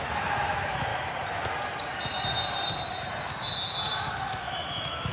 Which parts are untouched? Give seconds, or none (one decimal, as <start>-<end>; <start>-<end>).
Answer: 0.9-4.0